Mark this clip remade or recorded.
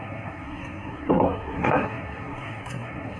remade